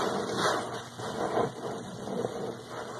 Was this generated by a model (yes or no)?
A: no